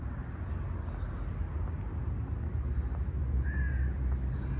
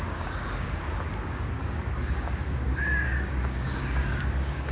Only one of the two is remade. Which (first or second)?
second